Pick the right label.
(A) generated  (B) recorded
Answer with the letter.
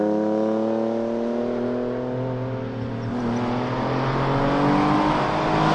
B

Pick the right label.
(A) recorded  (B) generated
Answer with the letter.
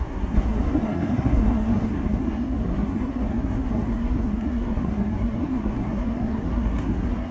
B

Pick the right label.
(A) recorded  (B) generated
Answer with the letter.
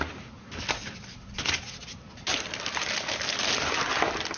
A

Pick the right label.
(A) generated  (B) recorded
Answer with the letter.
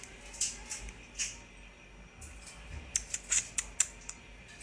B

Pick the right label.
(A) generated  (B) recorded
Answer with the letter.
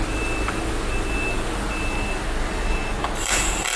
B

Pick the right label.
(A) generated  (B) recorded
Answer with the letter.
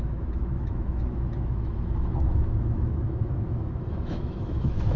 A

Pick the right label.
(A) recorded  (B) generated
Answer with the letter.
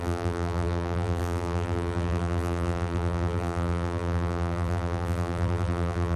B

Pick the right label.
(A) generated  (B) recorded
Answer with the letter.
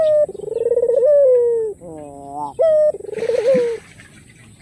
B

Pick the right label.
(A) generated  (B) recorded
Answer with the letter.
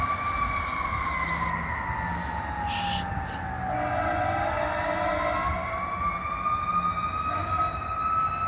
B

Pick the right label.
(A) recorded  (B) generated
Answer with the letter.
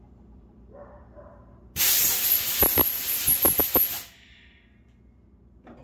A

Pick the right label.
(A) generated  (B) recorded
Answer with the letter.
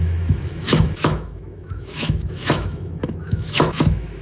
A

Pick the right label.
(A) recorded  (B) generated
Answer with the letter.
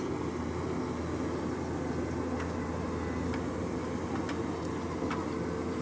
A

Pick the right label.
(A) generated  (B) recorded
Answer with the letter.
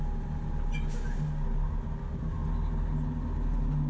B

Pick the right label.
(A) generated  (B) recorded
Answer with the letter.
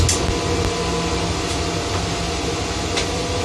B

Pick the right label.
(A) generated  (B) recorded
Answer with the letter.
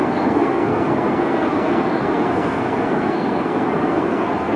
A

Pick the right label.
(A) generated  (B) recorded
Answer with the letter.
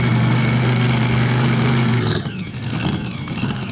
A